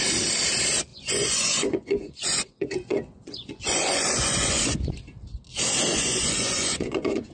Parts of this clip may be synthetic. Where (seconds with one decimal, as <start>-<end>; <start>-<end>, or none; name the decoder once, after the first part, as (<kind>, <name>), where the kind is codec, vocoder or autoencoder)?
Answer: 0.9-4.9 (vocoder, Vocos); 5.9-7.3